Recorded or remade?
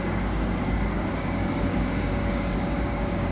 remade